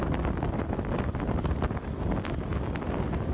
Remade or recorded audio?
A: recorded